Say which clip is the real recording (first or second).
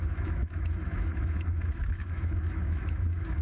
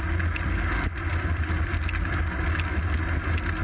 second